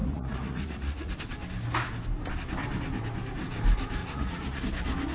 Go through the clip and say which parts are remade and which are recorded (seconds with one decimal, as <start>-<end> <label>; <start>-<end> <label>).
0.0-1.1 remade; 1.1-4.0 recorded; 4.0-4.6 remade; 4.6-5.1 recorded